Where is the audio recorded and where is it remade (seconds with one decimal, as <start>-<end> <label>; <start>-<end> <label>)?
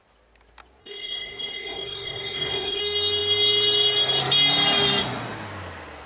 0.0-0.8 recorded; 0.8-2.8 remade; 2.8-6.1 recorded